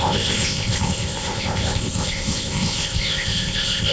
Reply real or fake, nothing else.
fake